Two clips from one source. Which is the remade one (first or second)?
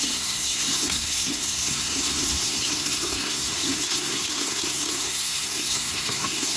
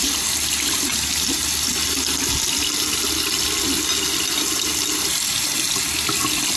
first